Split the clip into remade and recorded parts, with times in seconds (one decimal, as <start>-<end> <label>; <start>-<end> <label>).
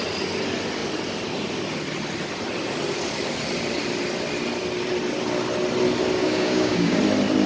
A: 0.0-6.2 recorded; 6.2-7.0 remade; 7.0-7.5 recorded